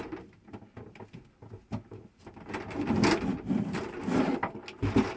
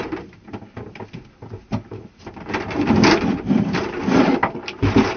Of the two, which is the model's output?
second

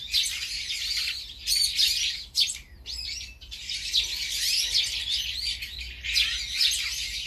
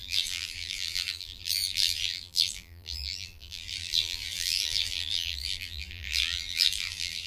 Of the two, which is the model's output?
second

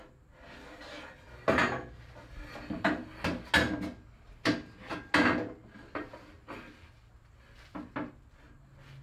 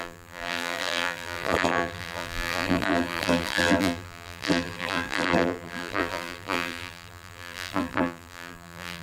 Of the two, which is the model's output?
second